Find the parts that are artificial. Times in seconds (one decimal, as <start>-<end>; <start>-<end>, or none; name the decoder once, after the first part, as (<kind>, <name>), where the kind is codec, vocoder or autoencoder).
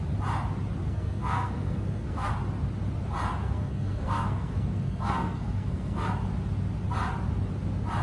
0.8-2.3 (codec, SNAC); 3.4-6.1